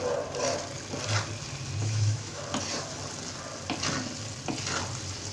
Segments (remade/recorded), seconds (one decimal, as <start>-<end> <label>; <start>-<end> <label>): 0.0-1.8 recorded; 1.8-2.4 remade; 2.4-5.3 recorded